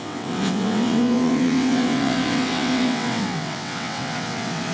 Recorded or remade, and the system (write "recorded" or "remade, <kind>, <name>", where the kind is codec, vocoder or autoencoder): remade, vocoder, WaveNeXt